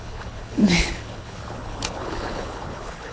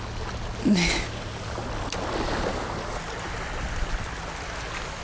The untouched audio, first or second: second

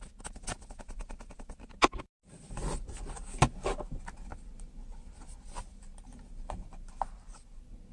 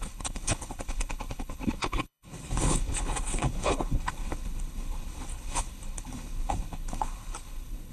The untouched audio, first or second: first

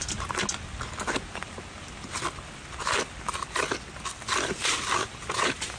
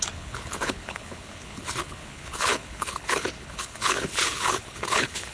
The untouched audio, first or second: first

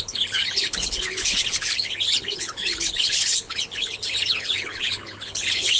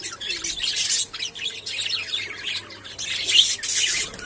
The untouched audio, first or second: second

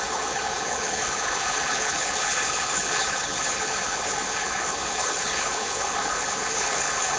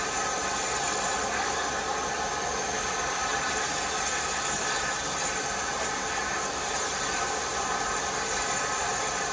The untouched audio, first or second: second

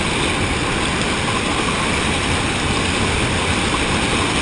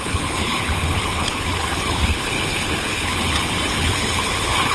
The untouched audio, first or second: first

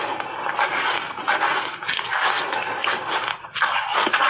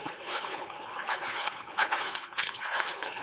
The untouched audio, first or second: first